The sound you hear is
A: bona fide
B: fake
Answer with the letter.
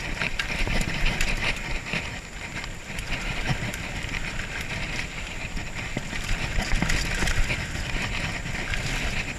A